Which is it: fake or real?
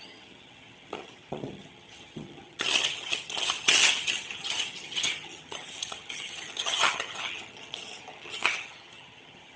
fake